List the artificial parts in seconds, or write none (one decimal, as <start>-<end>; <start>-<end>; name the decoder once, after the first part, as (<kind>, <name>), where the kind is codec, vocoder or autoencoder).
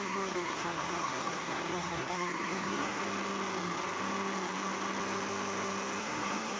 0.0-3.0 (codec, SNAC); 6.0-6.6